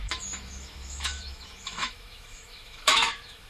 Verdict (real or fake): fake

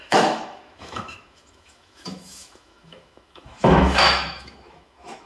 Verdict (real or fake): fake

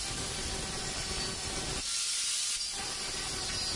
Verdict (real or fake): real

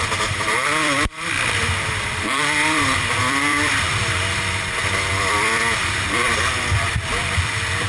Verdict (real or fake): fake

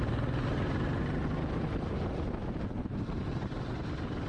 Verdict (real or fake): real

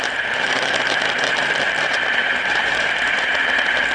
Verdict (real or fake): fake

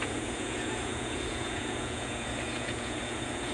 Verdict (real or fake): fake